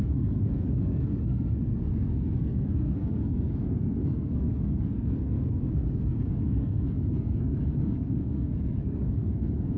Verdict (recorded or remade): remade